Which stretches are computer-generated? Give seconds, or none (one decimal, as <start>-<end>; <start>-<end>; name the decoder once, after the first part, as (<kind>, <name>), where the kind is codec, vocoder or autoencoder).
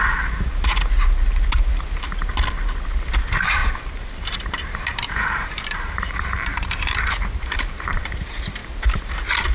3.6-8.1 (vocoder, BigVGAN v2)